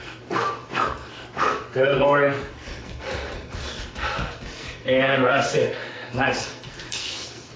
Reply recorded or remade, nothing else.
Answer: remade